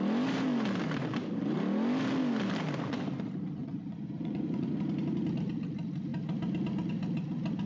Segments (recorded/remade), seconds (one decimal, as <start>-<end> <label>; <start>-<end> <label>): 0.0-3.6 recorded; 3.6-4.8 remade; 4.8-7.7 recorded